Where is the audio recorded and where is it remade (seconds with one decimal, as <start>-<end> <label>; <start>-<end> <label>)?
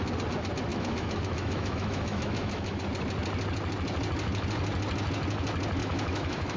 0.0-0.7 recorded; 0.7-2.8 remade; 2.8-5.8 recorded; 5.8-6.6 remade